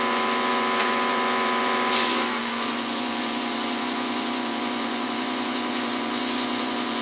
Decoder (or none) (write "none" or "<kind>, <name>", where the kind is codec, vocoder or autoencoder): vocoder, Vocos